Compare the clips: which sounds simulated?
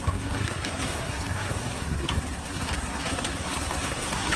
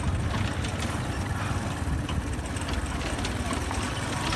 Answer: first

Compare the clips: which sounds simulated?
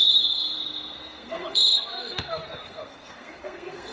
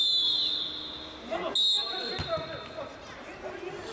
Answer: first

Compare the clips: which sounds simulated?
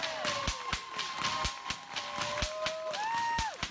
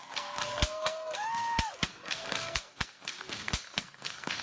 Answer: second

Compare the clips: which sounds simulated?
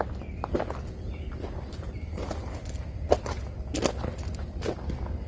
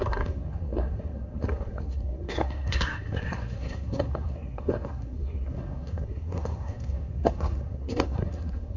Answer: second